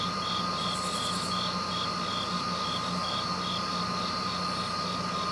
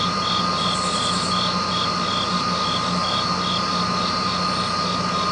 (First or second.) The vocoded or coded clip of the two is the first